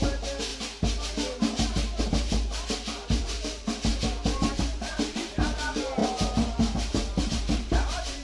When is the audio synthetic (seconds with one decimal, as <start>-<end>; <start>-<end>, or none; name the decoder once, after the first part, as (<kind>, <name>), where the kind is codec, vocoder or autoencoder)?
0.0-0.5 (vocoder, BigVGAN v2); 2.0-3.9; 4.5-8.2